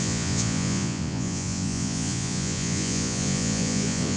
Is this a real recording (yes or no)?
no